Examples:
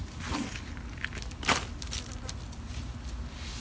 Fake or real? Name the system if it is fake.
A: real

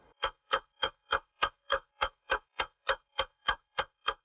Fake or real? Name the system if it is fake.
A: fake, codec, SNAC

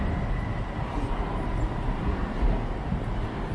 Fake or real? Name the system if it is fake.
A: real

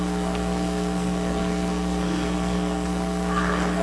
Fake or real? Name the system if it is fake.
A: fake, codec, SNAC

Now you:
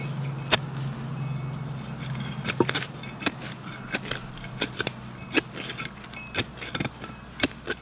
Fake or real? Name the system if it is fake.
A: real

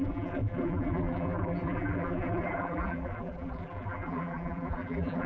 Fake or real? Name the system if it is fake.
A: fake, vocoder, BigVGAN v2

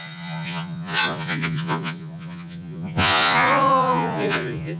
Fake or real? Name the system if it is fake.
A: fake, vocoder, Vocos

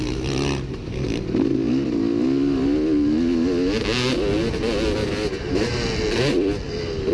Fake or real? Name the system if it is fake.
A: real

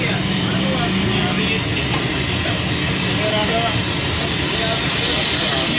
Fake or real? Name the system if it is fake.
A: real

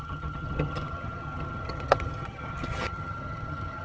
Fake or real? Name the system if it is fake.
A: fake, vocoder, HiFi-GAN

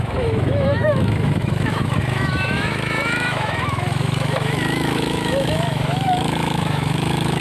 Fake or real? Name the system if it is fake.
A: fake, autoencoder, DAC-VAE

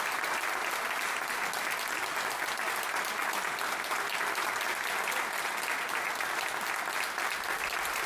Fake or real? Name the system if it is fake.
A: real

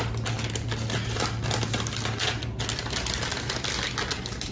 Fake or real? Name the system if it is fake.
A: real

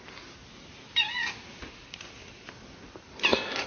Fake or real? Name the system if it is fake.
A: real